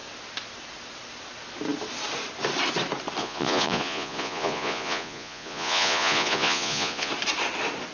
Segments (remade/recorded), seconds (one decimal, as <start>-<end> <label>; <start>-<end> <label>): 0.0-3.2 recorded; 3.2-7.1 remade; 7.1-7.9 recorded